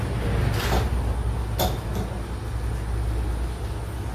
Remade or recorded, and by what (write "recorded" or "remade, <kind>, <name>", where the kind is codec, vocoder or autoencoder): recorded